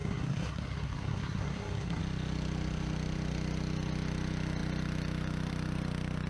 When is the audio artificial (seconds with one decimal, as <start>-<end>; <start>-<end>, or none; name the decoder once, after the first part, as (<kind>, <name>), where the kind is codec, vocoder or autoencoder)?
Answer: 0.0-2.0 (codec, SNAC)